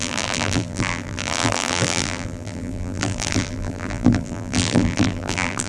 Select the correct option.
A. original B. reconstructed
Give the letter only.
B